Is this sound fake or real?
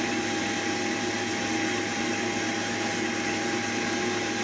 real